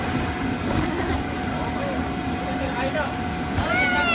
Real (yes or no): yes